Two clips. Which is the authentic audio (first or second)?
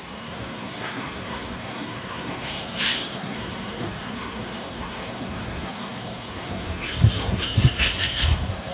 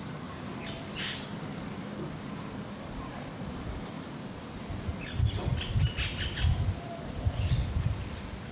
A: second